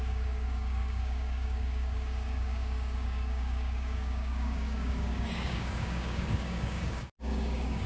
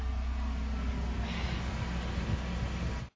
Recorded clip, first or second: second